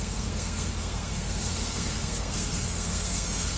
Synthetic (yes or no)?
yes